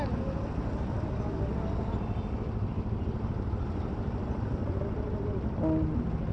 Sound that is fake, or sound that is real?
real